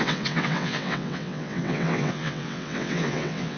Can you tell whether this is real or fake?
fake